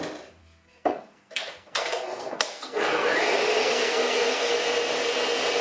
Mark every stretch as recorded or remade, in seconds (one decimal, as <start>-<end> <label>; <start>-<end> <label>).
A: 0.0-0.4 recorded; 0.4-3.2 remade; 3.2-3.6 recorded; 3.6-4.5 remade; 4.5-5.6 recorded